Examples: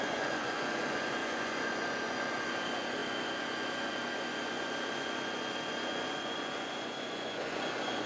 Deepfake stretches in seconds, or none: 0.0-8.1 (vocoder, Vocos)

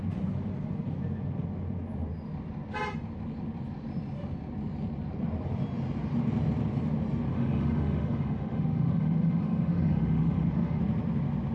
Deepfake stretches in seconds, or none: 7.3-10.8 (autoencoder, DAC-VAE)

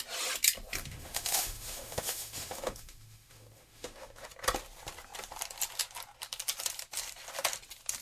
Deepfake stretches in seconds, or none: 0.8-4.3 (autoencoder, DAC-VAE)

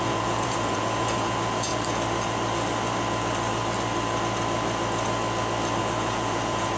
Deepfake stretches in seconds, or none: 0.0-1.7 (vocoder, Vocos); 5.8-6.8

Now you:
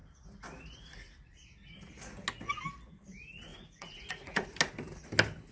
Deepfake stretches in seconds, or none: 3.5-4.5 (vocoder, Vocos)

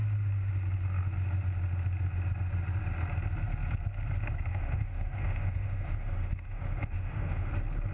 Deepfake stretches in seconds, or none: 4.5-7.5 (autoencoder, DAC-VAE)

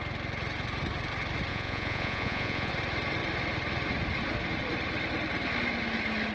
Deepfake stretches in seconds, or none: 1.5-2.7 (vocoder, Vocos)

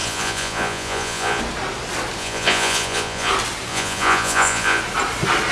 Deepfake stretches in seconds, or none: 0.0-1.4 (vocoder, Vocos); 2.2-3.3; 3.7-4.8